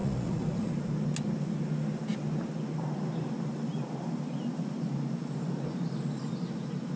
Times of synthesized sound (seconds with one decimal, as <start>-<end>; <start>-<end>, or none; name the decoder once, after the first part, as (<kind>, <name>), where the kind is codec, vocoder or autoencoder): 0.0-0.7 (vocoder, Vocos)